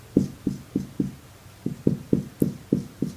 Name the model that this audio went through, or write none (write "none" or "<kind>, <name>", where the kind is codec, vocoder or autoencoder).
none